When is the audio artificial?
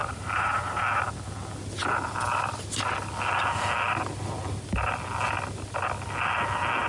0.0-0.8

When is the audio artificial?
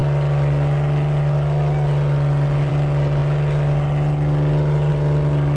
none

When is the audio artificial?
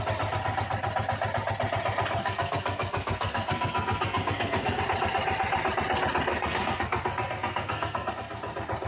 2.2-4.8; 6.3-8.1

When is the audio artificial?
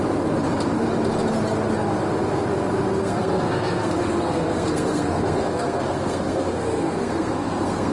3.0-7.9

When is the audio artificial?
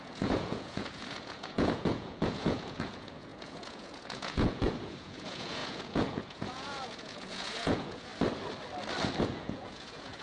0.0-8.1; 9.2-10.2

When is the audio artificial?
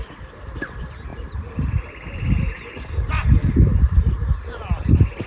1.1-1.7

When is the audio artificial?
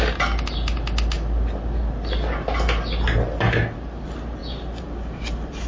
none